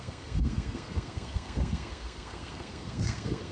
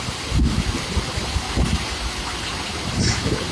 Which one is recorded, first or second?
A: second